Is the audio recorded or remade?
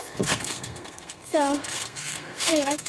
remade